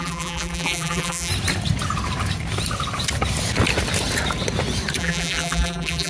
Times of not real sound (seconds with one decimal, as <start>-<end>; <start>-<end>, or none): 0.0-1.3; 5.0-6.1